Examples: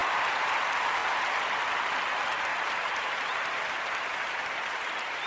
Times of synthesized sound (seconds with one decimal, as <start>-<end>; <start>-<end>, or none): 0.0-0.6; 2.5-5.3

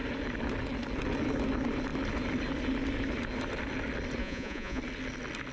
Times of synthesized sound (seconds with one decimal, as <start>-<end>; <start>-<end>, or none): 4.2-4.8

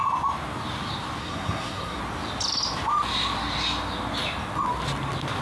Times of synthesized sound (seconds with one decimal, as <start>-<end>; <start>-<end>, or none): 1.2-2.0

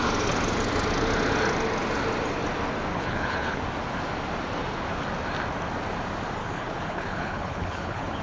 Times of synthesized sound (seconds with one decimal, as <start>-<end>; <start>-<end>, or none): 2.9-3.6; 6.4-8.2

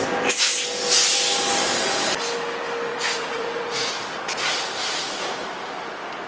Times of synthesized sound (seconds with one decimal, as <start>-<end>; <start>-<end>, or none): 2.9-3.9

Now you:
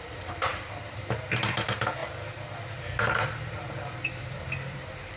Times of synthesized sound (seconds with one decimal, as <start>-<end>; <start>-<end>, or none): 0.0-2.0; 3.4-5.2

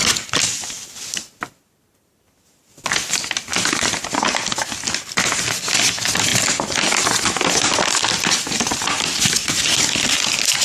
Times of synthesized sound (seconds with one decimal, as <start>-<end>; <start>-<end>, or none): none